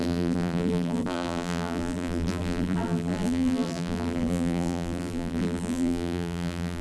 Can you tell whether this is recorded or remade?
remade